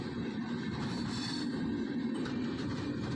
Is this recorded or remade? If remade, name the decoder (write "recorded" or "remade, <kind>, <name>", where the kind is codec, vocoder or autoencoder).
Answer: recorded